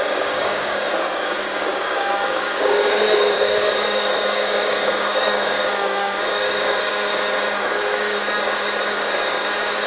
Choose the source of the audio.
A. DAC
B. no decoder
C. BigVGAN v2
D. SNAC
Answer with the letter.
A